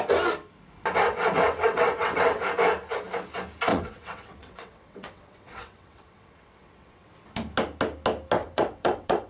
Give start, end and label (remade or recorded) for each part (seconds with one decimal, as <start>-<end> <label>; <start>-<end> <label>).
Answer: 0.0-1.1 recorded; 1.1-2.4 remade; 2.4-3.7 recorded; 3.7-7.1 remade; 7.1-8.4 recorded; 8.4-9.3 remade